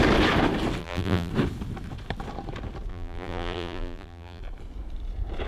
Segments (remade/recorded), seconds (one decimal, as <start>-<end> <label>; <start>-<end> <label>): 0.0-0.8 recorded; 0.8-1.3 remade; 1.3-2.9 recorded; 2.9-4.4 remade; 4.4-5.5 recorded